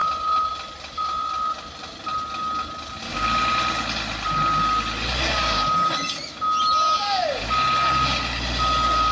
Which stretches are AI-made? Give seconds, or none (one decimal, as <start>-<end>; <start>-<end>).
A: none